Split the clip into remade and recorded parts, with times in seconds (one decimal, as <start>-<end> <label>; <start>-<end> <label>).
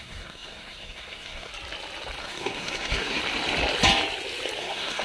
0.0-1.5 remade; 1.5-2.2 recorded; 2.2-3.2 remade; 3.2-4.6 recorded; 4.6-5.0 remade